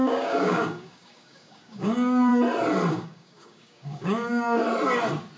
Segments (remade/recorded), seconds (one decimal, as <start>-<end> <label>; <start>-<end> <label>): 0.0-2.3 remade; 2.3-2.9 recorded; 2.9-4.6 remade; 4.6-5.4 recorded